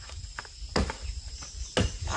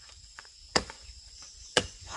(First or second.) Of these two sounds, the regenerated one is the second